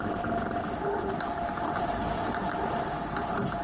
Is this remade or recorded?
recorded